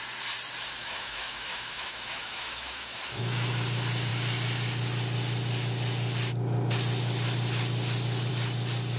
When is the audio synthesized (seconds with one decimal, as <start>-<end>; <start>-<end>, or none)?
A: 0.8-3.5